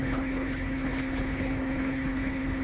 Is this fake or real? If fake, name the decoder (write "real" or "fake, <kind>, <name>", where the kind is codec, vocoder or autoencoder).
fake, codec, HILCodec